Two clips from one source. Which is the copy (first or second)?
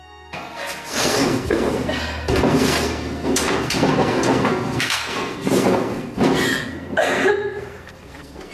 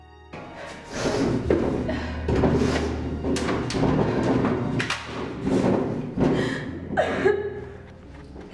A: first